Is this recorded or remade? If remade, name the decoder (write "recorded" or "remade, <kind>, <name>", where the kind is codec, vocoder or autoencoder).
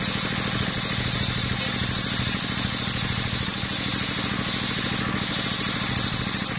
recorded